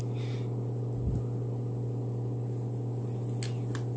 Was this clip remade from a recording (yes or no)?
no